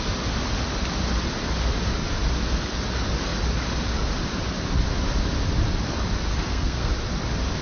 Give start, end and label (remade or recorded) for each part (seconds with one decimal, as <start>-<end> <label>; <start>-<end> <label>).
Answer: 0.0-6.3 recorded; 6.3-6.9 remade; 6.9-7.6 recorded